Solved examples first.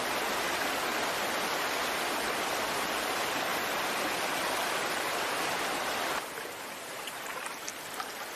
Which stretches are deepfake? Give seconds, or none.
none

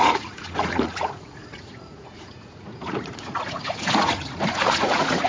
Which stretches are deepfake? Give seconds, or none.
0.0-5.3 (vocoder, Vocos)

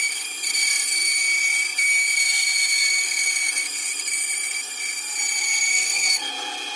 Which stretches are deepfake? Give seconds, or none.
5.7-6.3 (codec, SNAC)

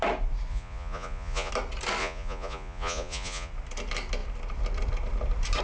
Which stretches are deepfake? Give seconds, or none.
0.5-1.5 (vocoder, Vocos); 2.0-3.5

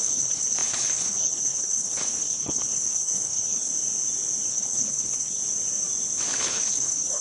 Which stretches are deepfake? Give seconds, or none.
0.0-3.7 (codec, HILCodec); 4.5-5.4; 6.4-7.2

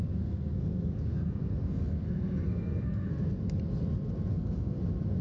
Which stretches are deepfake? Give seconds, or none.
0.0-3.1 (codec, SNAC); 4.3-4.8